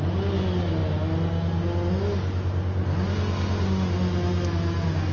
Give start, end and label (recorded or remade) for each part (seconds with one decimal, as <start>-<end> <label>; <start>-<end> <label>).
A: 0.0-5.1 recorded